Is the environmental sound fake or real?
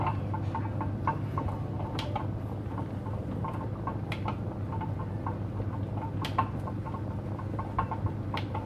real